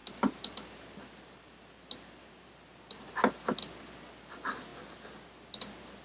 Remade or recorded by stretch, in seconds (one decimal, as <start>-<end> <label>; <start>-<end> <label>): 0.0-6.0 recorded